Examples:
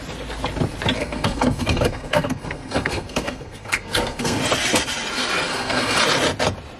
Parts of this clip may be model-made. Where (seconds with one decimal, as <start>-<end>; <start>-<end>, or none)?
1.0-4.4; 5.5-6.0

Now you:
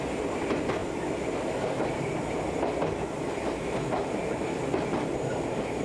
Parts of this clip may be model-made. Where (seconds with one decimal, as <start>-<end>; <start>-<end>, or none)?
none

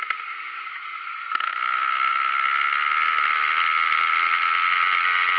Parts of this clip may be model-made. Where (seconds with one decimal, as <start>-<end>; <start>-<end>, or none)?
none